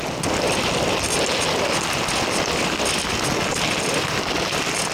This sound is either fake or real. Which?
real